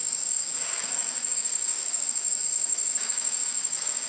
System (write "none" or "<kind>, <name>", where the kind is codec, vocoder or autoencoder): codec, DAC